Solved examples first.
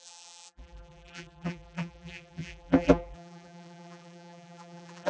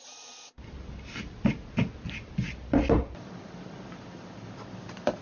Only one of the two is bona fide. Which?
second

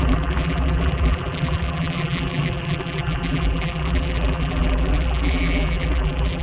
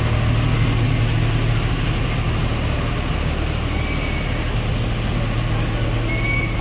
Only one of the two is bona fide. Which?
second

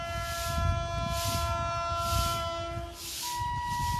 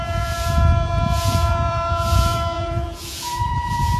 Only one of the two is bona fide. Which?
first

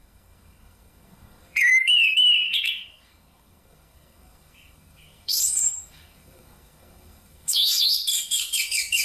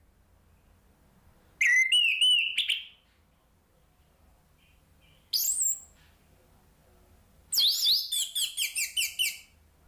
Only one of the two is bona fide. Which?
second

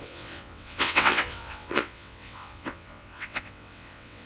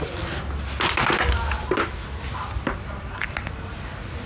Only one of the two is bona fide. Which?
second